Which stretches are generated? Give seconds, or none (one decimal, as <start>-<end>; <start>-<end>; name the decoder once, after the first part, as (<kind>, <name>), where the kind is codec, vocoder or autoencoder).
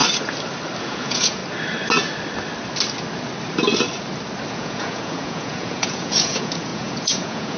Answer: 0.8-1.4 (vocoder, Vocos); 4.5-7.6